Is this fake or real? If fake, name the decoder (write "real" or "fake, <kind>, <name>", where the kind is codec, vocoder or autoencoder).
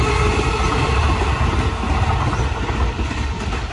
real